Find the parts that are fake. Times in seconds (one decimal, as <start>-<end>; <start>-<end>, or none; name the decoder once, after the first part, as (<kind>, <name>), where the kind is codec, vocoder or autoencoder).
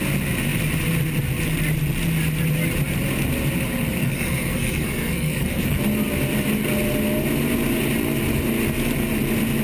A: 4.0-5.8 (codec, SNAC)